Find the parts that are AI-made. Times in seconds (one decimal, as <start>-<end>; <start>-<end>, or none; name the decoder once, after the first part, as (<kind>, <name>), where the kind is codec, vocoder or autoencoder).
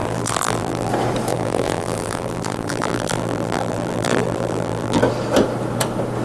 0.0-0.9 (vocoder, BigVGAN v2); 1.3-5.0